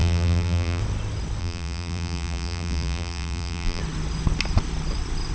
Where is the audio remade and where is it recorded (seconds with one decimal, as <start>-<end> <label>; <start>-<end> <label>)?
0.0-0.8 remade; 0.8-1.4 recorded; 1.4-3.8 remade; 3.8-5.3 recorded